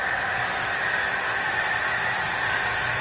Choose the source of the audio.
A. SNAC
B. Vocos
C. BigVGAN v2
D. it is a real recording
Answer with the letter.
C